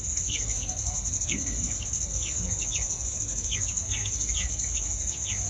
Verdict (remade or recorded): remade